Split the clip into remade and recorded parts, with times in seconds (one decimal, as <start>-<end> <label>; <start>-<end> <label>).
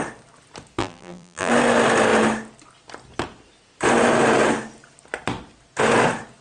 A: 0.0-0.8 recorded; 0.8-1.5 remade; 1.5-6.4 recorded